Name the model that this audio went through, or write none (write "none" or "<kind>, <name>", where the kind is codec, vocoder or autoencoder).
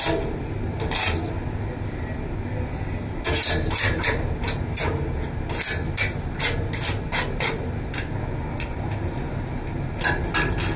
none